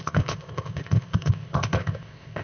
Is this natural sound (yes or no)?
no